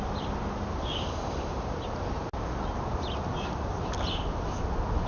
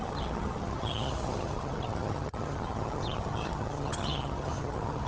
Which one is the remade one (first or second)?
second